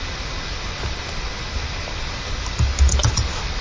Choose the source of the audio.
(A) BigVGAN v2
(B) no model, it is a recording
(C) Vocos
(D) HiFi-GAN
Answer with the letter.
B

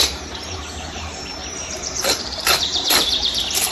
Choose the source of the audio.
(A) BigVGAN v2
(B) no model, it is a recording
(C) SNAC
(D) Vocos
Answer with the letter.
A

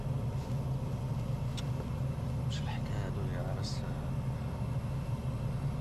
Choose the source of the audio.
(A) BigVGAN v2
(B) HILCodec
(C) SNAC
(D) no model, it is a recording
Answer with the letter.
D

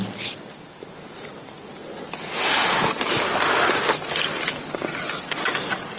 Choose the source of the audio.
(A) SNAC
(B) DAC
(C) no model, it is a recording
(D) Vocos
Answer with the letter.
C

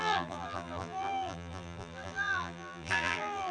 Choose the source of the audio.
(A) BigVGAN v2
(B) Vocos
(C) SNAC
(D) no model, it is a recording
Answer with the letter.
A